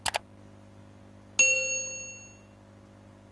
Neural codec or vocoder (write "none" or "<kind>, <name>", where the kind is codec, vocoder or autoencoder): none